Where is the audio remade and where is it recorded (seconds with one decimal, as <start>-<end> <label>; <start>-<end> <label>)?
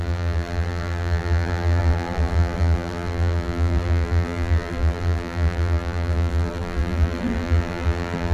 0.0-8.3 remade